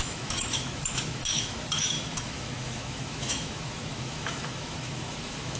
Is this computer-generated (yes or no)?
yes